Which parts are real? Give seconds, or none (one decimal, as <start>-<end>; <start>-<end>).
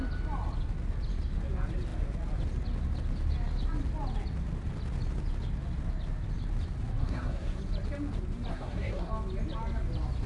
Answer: 0.0-7.0; 7.6-8.5; 9.1-10.3